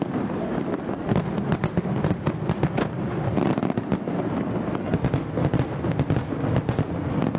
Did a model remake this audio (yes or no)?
no